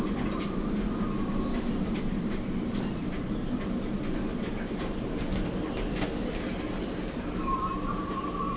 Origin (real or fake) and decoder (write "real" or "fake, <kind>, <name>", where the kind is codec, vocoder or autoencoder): real